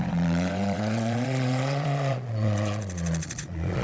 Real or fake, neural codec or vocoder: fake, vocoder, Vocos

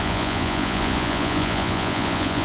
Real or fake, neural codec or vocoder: fake, vocoder, Vocos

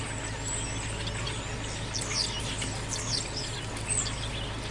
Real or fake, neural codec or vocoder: real